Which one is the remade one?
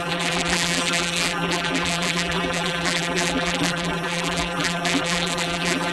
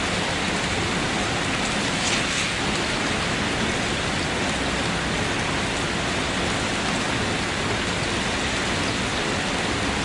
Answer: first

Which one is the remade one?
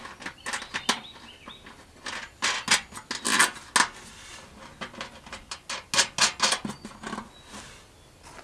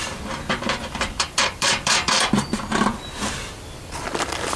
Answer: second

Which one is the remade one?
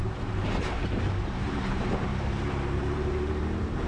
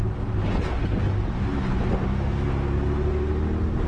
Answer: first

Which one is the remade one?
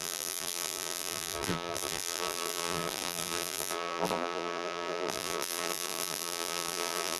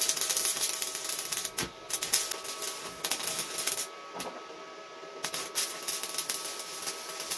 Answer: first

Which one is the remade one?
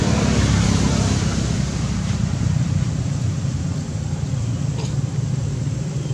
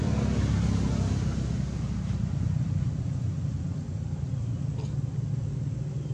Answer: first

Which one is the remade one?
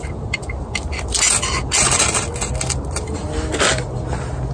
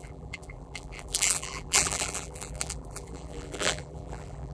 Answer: second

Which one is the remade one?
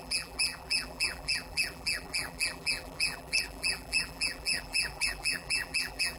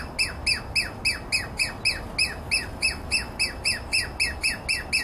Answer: first